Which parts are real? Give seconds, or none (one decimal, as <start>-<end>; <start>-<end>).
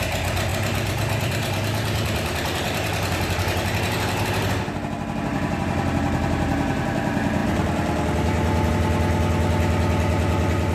0.0-0.5; 4.5-5.3; 6.8-10.7